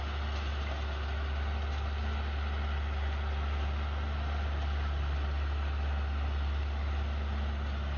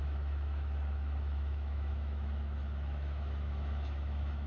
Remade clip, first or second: second